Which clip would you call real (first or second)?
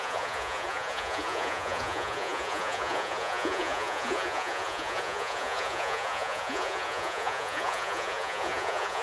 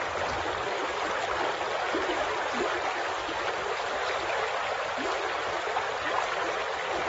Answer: second